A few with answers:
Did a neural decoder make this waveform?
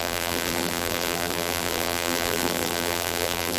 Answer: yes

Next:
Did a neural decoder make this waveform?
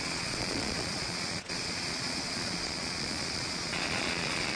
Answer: yes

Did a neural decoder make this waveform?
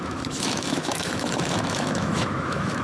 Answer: yes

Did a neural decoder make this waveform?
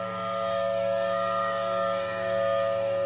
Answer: yes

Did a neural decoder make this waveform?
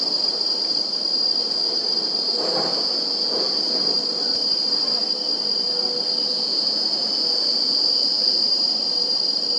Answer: no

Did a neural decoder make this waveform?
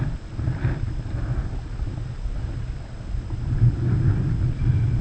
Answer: no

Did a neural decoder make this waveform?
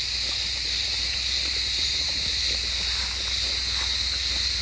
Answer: no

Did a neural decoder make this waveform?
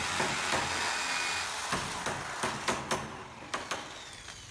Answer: no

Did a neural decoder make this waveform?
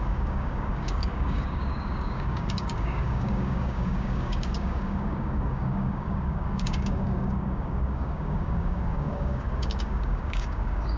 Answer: yes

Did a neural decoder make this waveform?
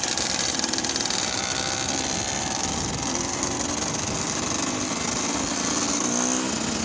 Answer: no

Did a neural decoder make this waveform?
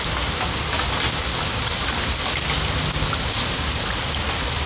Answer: no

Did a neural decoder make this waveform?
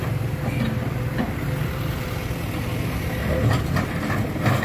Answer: no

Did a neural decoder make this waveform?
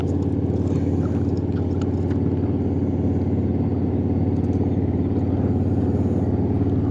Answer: no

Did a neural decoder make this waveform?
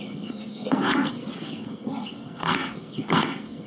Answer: yes